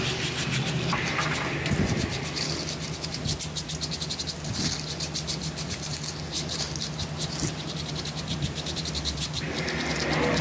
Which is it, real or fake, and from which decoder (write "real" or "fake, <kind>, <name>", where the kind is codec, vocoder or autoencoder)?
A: real